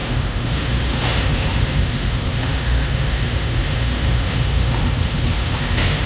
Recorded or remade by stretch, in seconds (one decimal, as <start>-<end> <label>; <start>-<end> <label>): 0.0-6.1 remade

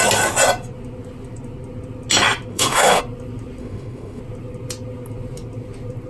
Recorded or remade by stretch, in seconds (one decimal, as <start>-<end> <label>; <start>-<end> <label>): 0.0-2.5 recorded; 2.5-3.0 remade; 3.0-3.6 recorded; 3.6-4.2 remade; 4.2-6.1 recorded

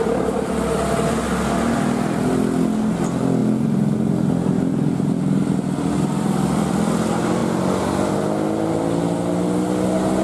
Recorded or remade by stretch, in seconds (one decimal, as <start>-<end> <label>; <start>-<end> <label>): 0.0-10.2 recorded

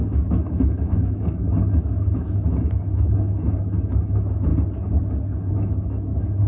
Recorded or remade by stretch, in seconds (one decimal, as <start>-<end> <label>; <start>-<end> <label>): 0.0-4.5 remade; 4.5-5.5 recorded; 5.5-6.5 remade